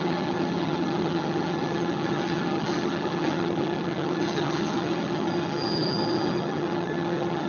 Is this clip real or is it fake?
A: fake